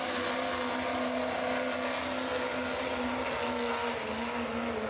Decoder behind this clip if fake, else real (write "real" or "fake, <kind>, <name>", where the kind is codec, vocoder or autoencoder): real